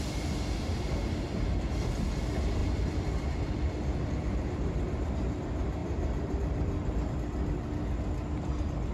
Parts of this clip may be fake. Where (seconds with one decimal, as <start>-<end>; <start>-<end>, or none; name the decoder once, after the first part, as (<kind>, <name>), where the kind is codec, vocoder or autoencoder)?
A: 2.6-4.4 (vocoder, BigVGAN v2); 5.8-7.1